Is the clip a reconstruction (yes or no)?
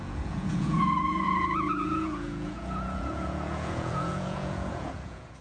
yes